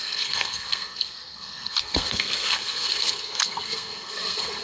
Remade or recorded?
remade